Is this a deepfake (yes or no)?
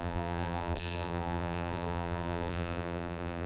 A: yes